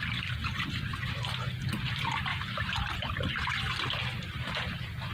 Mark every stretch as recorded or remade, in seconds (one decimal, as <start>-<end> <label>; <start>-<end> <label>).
0.0-5.1 recorded